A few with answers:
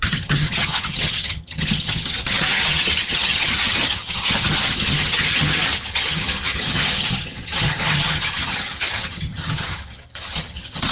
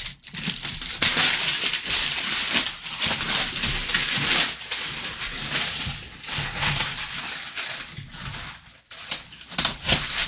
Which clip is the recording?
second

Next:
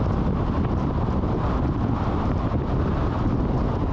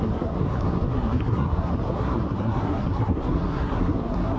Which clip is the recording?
first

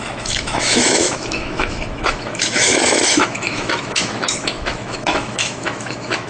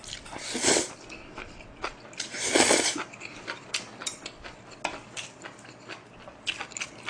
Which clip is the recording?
second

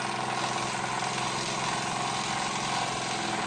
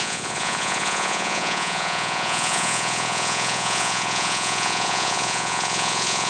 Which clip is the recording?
first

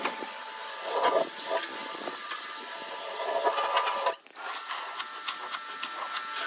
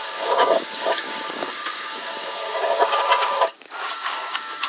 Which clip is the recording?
first